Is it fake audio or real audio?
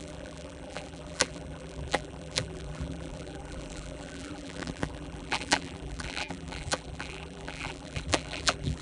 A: fake